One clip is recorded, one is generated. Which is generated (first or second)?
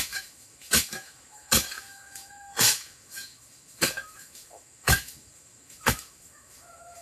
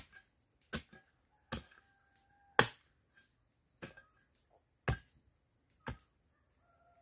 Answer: first